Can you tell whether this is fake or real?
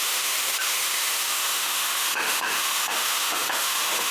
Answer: fake